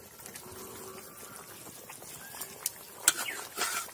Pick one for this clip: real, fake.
real